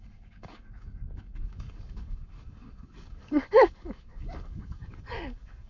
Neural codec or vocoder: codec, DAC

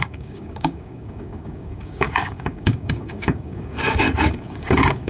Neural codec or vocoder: codec, DAC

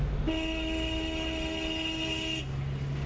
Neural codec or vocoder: none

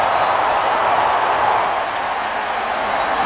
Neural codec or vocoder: none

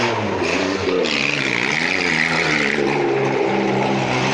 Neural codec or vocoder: none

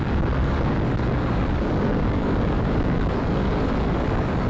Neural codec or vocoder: codec, DAC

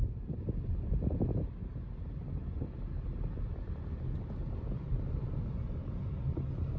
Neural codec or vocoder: none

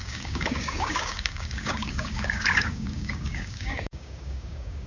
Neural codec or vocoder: codec, DAC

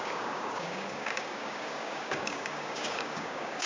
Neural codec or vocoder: codec, DAC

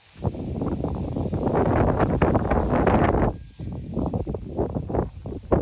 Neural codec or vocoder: none